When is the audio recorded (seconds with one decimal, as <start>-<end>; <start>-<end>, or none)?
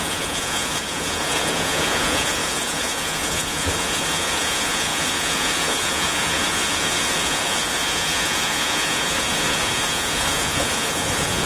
none